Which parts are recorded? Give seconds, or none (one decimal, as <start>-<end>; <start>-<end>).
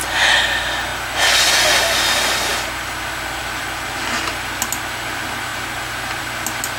0.0-6.8